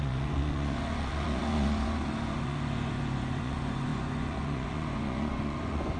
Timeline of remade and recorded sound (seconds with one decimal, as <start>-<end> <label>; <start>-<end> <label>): 0.0-6.0 remade